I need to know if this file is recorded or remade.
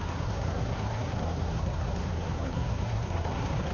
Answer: remade